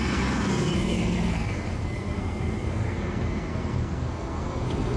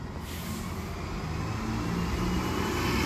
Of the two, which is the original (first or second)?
second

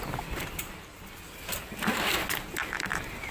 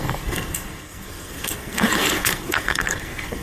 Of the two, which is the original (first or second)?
first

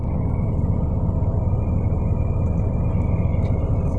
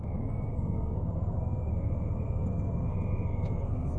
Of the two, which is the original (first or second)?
first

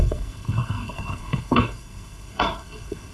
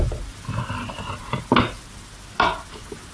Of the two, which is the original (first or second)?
second